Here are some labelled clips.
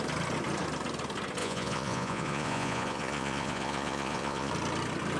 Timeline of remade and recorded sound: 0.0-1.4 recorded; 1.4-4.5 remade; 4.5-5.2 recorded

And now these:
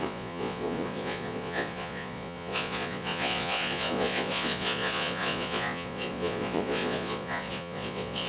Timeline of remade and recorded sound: 0.0-8.3 remade

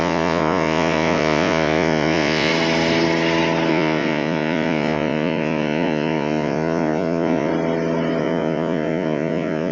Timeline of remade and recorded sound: 0.0-2.5 remade; 2.5-3.7 recorded; 3.7-7.5 remade; 7.5-8.2 recorded; 8.2-9.7 remade

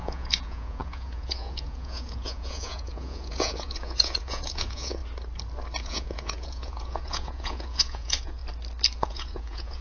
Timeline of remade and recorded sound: 0.0-5.0 remade; 5.0-5.8 recorded; 5.8-8.4 remade; 8.4-9.1 recorded; 9.1-9.8 remade

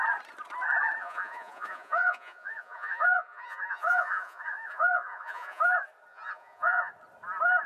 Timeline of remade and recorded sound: 0.0-1.0 recorded; 1.0-5.6 remade; 5.6-6.1 recorded; 6.1-6.9 remade; 6.9-7.7 recorded

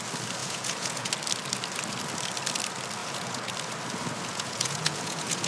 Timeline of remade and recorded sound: 0.0-0.4 recorded; 0.4-1.1 remade; 1.1-3.0 recorded; 3.0-3.5 remade; 3.5-4.3 recorded; 4.3-5.5 remade